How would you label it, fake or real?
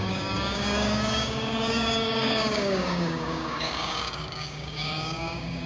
fake